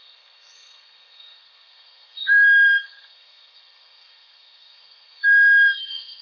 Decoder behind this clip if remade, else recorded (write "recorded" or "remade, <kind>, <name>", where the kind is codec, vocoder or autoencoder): remade, codec, SNAC